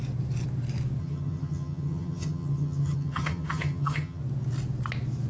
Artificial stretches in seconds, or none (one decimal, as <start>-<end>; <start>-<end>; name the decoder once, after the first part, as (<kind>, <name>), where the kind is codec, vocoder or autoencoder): 1.0-4.2 (vocoder, HiFi-GAN)